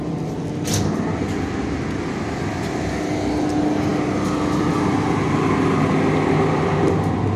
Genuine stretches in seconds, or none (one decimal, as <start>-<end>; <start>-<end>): 0.0-7.4